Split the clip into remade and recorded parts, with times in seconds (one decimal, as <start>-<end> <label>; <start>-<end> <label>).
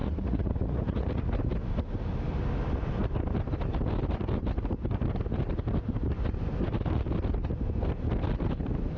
0.0-1.2 remade; 1.2-9.0 recorded